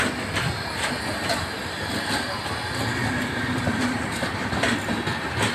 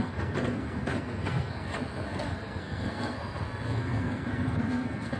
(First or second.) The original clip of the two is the first